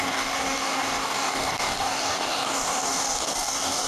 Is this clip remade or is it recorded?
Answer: remade